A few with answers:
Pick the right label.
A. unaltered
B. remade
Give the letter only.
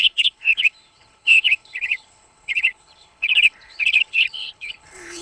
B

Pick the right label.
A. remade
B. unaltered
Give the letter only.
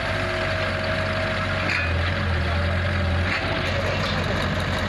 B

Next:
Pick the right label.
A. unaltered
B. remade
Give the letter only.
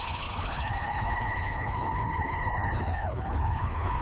B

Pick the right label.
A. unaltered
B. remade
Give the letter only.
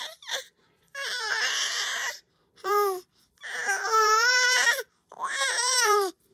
B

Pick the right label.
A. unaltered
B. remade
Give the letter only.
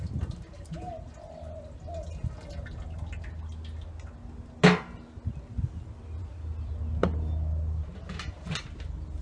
A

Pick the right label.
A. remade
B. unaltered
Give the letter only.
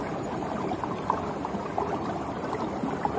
B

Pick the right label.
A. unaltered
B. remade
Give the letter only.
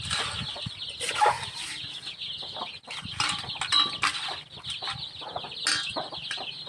A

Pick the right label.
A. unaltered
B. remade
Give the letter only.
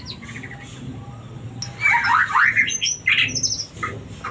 A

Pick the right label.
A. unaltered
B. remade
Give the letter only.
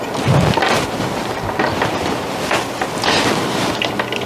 B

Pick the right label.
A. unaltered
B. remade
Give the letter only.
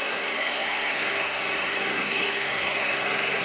B